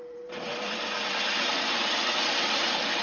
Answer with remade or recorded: remade